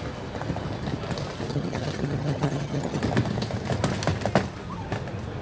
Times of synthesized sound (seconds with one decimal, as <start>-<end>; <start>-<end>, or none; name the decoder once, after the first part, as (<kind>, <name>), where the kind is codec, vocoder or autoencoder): 1.5-3.0 (vocoder, HiFi-GAN)